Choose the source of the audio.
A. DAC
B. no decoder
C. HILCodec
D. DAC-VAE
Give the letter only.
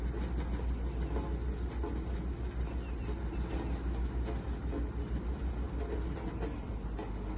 B